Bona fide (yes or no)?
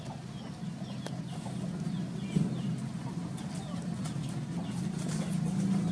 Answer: yes